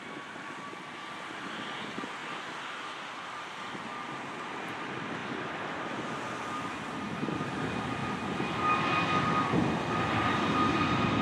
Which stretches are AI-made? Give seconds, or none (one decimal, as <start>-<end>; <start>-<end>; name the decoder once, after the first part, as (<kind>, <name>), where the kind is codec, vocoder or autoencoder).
none